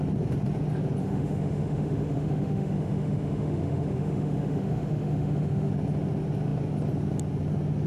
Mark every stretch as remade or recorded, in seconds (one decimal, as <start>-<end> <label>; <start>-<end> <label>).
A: 0.0-1.0 recorded; 1.0-5.7 remade; 5.7-7.9 recorded